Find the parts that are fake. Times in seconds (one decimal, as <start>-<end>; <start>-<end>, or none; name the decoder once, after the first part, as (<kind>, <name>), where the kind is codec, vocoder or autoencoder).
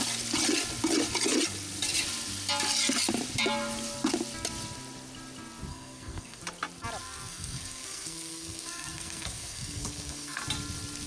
5.7-6.4 (codec, SNAC); 7.0-10.4